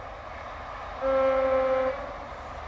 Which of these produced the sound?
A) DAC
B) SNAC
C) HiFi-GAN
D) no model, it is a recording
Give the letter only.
D